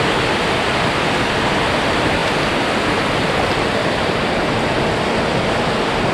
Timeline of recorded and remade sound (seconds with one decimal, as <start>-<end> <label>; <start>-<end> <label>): 0.0-2.2 remade; 2.2-3.8 recorded; 3.8-6.1 remade